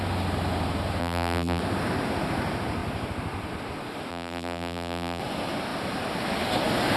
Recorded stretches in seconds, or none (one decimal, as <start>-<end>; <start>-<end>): 0.0-1.0; 1.6-4.1; 5.2-7.0